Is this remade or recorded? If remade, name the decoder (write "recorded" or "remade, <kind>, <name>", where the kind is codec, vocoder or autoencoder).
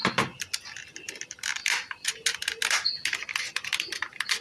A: recorded